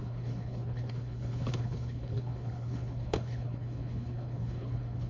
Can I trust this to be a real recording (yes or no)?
no